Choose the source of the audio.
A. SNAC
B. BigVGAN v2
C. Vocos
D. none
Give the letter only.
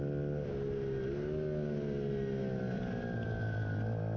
D